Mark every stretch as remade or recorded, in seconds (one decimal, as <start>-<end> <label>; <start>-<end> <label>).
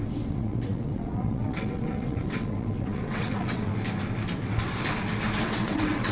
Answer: 0.0-3.7 remade; 3.7-5.4 recorded; 5.4-6.1 remade